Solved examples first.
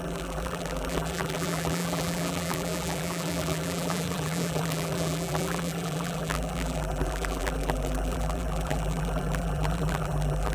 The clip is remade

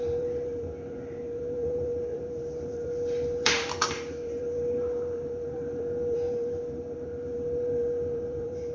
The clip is remade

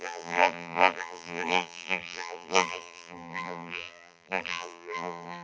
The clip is remade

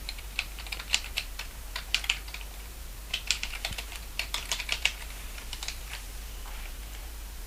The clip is remade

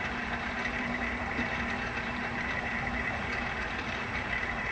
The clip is remade